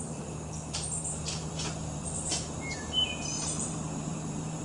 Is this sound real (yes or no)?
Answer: no